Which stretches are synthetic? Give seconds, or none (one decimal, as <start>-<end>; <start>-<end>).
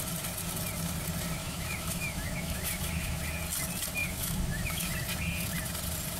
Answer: 1.4-3.2; 4.0-4.9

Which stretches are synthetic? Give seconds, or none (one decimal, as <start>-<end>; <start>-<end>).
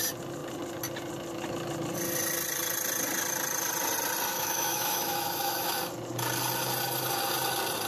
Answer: 4.3-5.7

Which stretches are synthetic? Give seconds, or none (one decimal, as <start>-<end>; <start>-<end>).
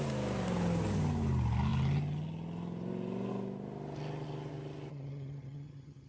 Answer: 4.9-6.1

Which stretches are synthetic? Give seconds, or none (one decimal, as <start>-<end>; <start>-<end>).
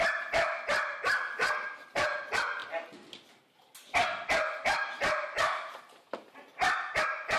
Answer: none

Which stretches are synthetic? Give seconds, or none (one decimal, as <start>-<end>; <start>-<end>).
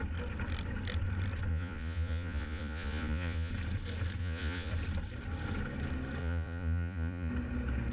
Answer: 1.5-3.5; 4.2-4.7; 6.2-7.3